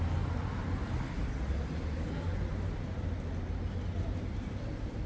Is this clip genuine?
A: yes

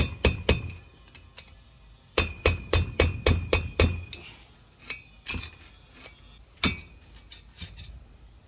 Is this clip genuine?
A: yes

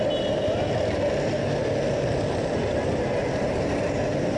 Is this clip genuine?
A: yes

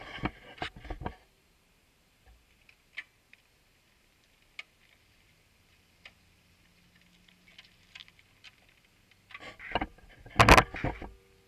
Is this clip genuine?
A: yes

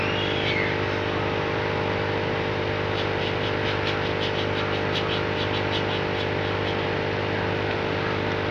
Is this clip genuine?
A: yes